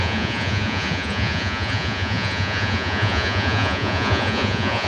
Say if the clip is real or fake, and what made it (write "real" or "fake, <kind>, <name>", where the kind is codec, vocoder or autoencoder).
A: fake, vocoder, Vocos